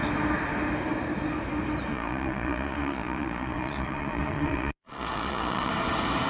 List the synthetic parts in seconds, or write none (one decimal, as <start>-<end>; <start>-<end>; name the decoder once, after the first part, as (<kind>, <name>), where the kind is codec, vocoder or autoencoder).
1.9-5.7 (vocoder, Vocos)